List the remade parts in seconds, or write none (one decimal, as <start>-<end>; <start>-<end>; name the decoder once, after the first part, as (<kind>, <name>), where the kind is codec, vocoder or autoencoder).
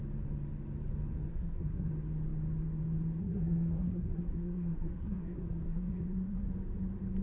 1.3-1.9 (codec, SNAC); 3.2-6.5